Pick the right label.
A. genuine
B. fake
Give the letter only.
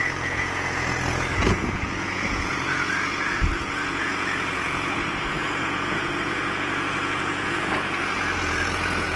B